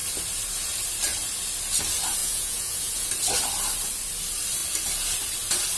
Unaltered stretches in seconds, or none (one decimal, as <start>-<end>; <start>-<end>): 0.0-2.2; 3.1-5.8